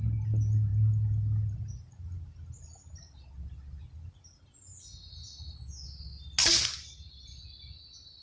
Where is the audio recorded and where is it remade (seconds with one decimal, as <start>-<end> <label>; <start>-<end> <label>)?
0.0-8.2 recorded